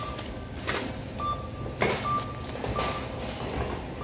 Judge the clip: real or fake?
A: real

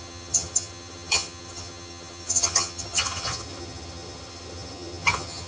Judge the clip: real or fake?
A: fake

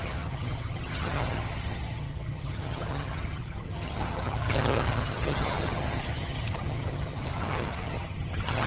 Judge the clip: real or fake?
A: fake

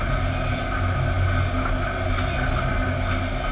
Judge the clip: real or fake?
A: real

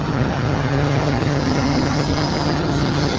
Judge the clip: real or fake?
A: fake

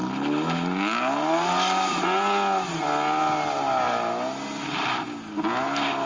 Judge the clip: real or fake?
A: real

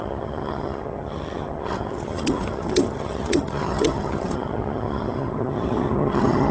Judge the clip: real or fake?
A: fake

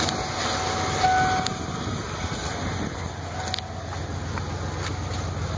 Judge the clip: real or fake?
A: real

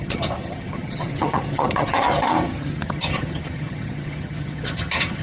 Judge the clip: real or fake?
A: fake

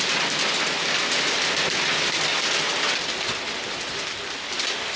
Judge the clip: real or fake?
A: real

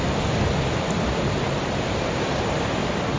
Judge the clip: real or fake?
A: real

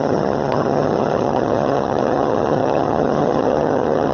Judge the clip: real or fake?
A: fake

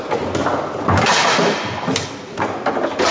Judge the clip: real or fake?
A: real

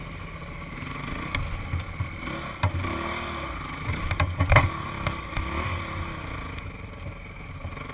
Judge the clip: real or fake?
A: real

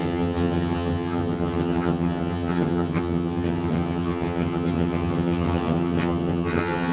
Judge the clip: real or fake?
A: fake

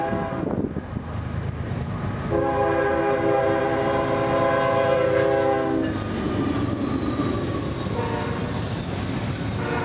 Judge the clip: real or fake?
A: real